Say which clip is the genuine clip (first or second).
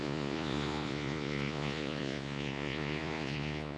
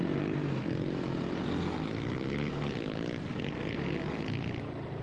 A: second